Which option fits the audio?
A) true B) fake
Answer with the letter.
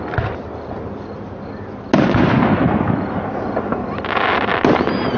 A